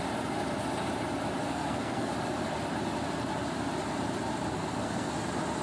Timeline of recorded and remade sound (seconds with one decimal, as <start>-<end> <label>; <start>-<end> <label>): 0.0-1.4 recorded; 1.4-2.1 remade; 2.1-4.5 recorded; 4.5-5.1 remade; 5.1-5.6 recorded